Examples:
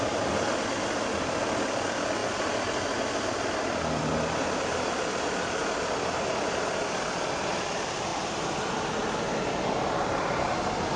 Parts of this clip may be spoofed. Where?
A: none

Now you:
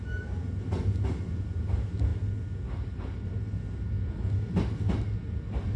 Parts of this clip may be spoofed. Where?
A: none

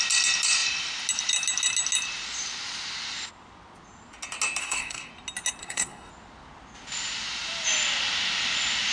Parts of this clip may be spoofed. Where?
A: 4.6-5.1 (codec, SNAC); 5.6-6.1

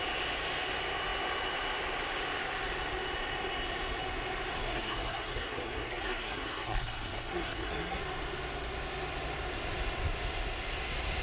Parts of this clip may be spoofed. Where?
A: 4.6-8.0 (codec, SNAC)

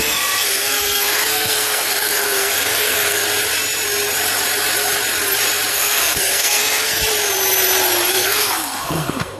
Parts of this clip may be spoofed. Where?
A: 0.0-3.2 (codec, SNAC); 5.7-7.0; 8.1-9.4

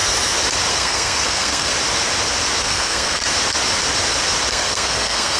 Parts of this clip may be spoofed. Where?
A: 0.7-1.7 (codec, SNAC); 2.6-3.2; 4.5-5.4

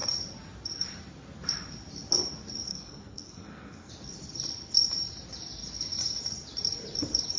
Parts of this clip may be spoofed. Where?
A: 2.7-3.9 (codec, SNAC)